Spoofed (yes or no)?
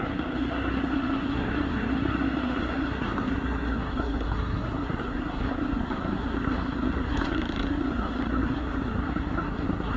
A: yes